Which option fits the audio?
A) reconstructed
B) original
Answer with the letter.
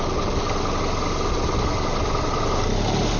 B